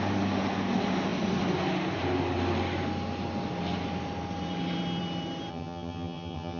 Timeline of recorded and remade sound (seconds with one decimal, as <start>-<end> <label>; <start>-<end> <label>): 0.0-5.5 recorded; 5.5-6.6 remade